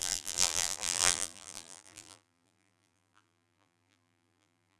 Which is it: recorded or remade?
remade